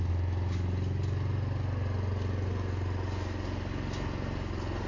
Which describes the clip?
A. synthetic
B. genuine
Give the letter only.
B